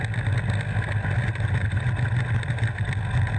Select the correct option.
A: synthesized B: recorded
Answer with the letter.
B